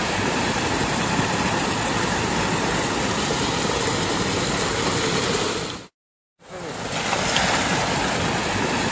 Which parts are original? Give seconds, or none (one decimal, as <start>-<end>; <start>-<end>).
0.0-8.9